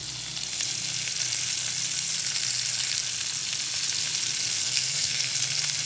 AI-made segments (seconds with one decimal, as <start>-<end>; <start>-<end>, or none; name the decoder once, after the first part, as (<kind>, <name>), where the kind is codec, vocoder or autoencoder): 4.6-5.3 (codec, SNAC)